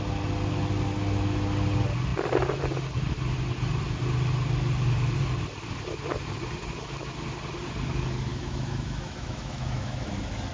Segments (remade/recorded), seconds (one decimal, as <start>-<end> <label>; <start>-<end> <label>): 0.0-8.3 recorded; 8.3-10.1 remade; 10.1-10.5 recorded